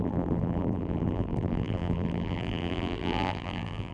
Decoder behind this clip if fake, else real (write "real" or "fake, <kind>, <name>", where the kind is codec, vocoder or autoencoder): fake, vocoder, BigVGAN v2